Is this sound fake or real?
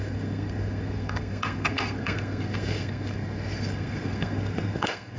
fake